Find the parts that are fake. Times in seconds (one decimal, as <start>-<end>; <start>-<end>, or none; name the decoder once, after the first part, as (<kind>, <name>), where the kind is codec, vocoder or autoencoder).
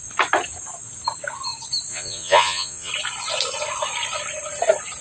1.9-2.9 (vocoder, Vocos)